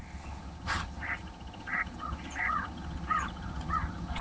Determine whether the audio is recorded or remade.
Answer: remade